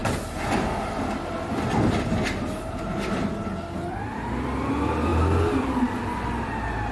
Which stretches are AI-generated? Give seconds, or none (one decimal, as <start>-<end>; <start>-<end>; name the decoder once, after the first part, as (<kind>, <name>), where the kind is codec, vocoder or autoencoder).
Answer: none